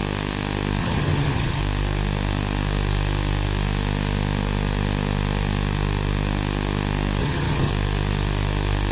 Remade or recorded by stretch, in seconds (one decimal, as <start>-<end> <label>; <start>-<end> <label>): 0.0-0.8 recorded; 0.8-1.6 remade; 1.6-7.2 recorded; 7.2-7.7 remade; 7.7-8.9 recorded